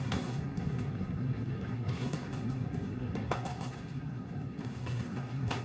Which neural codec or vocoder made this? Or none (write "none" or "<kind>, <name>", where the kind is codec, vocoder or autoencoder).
codec, SNAC